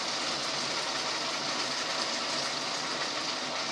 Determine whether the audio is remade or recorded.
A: recorded